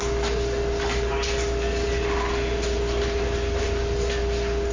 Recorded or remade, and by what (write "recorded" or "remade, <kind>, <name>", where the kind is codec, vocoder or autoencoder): recorded